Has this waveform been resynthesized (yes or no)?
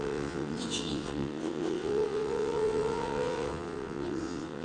yes